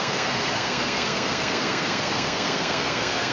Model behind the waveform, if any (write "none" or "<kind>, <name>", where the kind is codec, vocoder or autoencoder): codec, SNAC